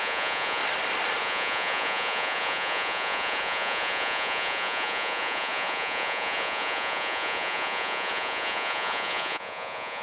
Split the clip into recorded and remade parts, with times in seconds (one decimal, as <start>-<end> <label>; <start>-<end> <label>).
0.0-0.6 remade; 0.6-1.2 recorded; 1.2-10.0 remade